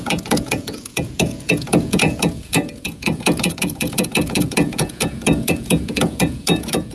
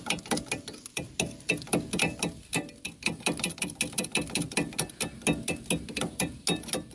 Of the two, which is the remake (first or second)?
first